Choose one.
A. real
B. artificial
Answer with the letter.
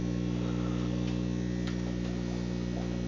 A